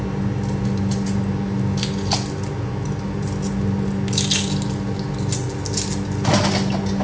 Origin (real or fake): real